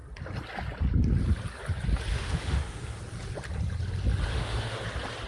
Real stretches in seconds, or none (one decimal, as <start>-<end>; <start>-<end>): 0.0-2.1; 3.0-4.3; 4.8-5.3